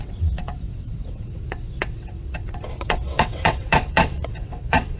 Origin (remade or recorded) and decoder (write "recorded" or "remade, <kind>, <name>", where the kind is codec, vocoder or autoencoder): remade, vocoder, WaveNeXt